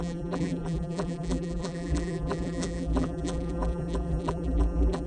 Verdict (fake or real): fake